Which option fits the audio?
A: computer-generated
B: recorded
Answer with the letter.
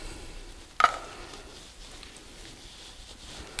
B